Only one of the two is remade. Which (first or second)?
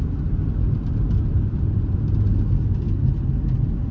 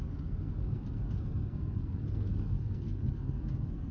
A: second